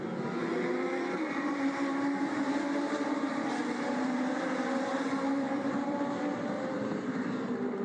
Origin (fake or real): fake